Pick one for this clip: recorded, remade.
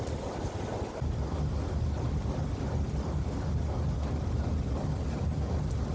recorded